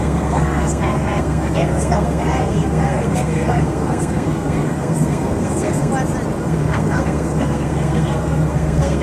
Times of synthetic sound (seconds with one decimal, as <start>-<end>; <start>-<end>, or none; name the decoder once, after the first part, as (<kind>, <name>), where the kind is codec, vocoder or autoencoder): 0.0-5.9 (codec, SNAC); 6.4-9.0